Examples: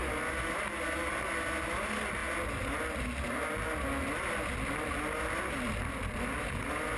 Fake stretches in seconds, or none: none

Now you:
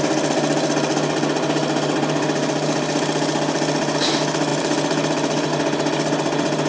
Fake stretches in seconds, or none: 4.5-5.5 (vocoder, BigVGAN v2)

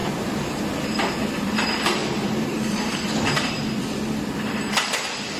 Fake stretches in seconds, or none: 0.0-0.6 (vocoder, BigVGAN v2); 2.0-3.0

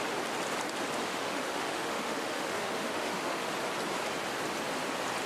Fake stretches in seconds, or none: 1.0-3.5 (autoencoder, DAC-VAE)

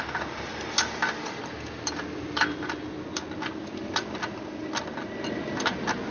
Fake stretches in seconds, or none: none

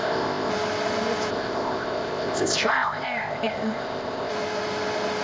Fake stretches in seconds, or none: 0.0-0.5 (codec, ZipCodec); 1.3-4.3

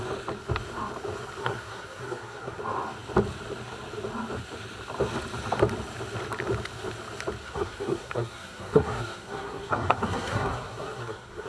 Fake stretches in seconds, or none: 1.4-2.6 (codec, SNAC); 7.4-11.5

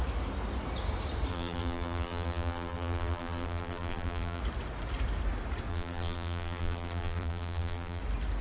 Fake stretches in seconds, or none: 1.3-4.4 (vocoder, BigVGAN v2); 5.7-8.0